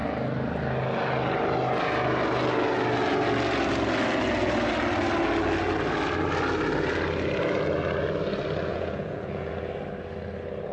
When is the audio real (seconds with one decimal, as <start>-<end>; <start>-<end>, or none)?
0.0-8.7; 9.5-10.7